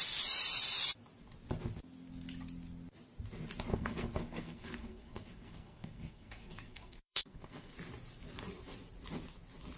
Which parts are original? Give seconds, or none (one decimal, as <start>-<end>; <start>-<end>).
0.0-3.7; 7.7-9.8